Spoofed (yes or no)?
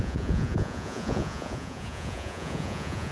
yes